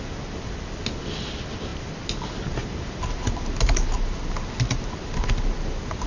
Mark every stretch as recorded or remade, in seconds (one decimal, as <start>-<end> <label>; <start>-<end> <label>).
0.0-6.1 recorded